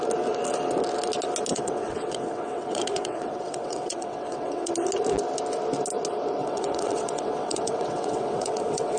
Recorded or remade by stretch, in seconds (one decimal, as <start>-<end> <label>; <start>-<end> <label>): 0.0-1.5 recorded; 1.5-4.7 remade; 4.7-6.4 recorded; 6.4-9.0 remade